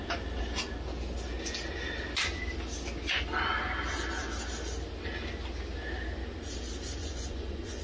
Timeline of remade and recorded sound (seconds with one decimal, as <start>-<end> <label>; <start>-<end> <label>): 0.0-7.0 recorded; 7.0-7.8 remade